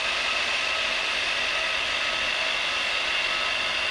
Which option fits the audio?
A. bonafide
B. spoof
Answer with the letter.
A